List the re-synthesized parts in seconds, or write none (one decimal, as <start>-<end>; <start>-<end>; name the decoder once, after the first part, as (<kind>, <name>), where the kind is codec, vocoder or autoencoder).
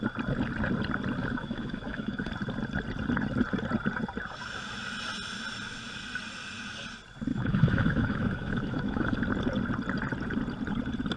1.2-2.3 (autoencoder, DAC-VAE); 7.3-9.2